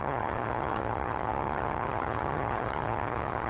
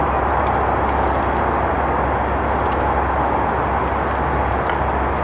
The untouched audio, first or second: second